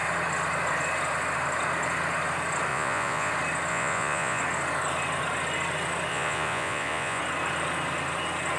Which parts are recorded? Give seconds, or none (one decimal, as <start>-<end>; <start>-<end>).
0.0-2.7; 3.3-3.7; 4.4-6.1; 7.2-8.6